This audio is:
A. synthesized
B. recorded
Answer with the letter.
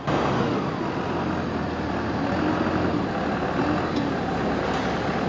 B